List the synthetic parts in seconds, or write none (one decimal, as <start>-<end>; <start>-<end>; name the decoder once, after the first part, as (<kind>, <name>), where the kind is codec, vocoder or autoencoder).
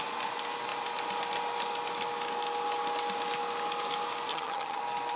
4.3-4.8 (vocoder, HiFi-GAN)